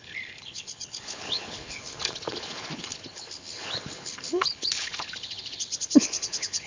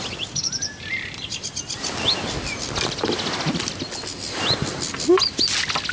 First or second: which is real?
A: second